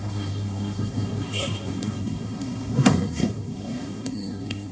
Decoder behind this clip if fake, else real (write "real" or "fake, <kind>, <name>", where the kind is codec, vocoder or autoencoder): fake, codec, SNAC